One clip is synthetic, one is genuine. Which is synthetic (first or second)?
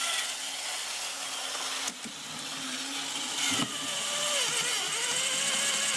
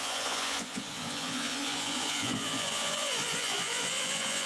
second